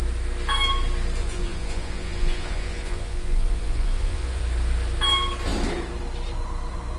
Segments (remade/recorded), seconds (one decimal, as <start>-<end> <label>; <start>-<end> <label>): 0.0-1.2 recorded; 1.2-4.4 remade; 4.4-7.0 recorded

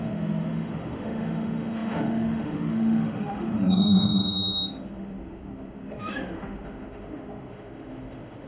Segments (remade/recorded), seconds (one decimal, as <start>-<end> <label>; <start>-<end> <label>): 0.0-8.5 remade

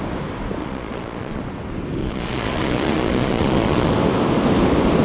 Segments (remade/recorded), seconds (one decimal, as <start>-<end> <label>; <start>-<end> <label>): 0.0-0.6 recorded; 0.6-1.4 remade; 1.4-2.0 recorded; 2.0-3.9 remade; 3.9-5.0 recorded